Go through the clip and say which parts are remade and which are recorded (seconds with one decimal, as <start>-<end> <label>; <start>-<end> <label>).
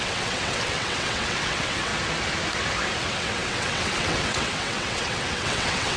0.0-1.9 remade; 1.9-3.0 recorded; 3.0-6.0 remade